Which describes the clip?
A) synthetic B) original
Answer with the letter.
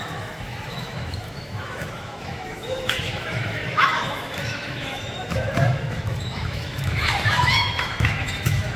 A